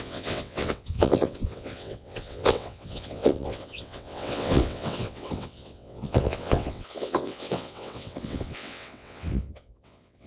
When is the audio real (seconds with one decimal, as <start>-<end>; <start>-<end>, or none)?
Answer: none

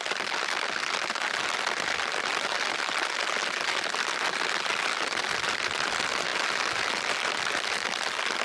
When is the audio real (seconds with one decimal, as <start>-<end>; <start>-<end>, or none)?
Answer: 0.0-8.4

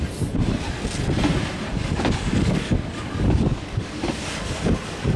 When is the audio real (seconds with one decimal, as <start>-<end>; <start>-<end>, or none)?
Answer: 0.0-1.8

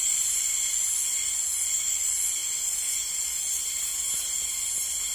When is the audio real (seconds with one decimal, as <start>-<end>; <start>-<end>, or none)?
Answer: 0.0-5.1

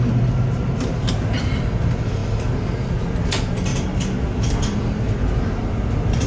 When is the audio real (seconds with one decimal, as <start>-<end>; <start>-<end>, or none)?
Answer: 0.0-6.3

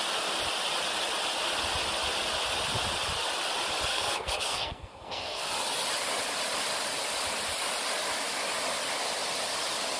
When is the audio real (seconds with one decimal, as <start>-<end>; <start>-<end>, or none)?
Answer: 0.0-3.9; 5.5-10.0